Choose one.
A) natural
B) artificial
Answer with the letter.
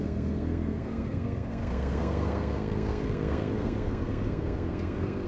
B